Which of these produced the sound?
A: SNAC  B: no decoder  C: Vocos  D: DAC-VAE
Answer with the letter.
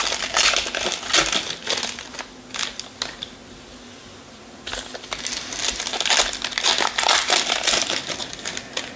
B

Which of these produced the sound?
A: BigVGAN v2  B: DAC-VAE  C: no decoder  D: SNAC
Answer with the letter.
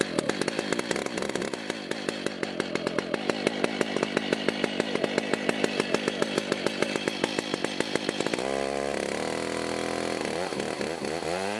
C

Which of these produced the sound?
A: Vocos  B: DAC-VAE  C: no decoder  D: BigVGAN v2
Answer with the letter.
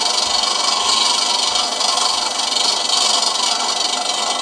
C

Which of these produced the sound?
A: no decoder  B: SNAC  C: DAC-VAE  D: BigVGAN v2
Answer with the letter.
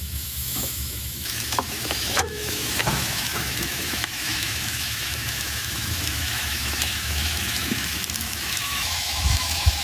C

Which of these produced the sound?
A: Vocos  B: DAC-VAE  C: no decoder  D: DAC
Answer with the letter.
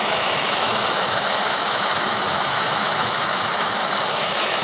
B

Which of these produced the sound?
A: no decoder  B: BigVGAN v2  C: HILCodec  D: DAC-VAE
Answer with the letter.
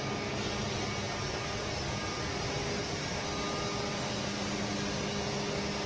A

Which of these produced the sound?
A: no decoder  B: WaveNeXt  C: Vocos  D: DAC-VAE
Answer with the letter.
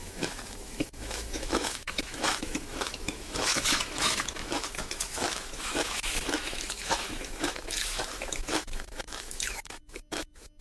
D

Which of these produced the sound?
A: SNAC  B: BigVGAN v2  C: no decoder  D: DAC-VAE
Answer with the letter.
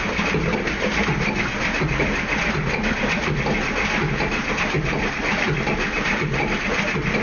C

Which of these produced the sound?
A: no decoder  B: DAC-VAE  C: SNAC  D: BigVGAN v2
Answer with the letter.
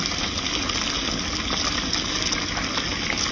A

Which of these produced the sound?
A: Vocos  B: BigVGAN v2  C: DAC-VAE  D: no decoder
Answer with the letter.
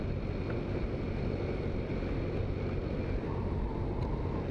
D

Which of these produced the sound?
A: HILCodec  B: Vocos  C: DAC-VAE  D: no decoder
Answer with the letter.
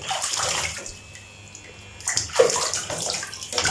D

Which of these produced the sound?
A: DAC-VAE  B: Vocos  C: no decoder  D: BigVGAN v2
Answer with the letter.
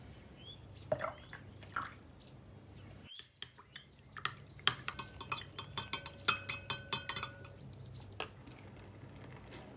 C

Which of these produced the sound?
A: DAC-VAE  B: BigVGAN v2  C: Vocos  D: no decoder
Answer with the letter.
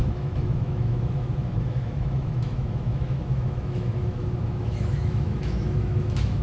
A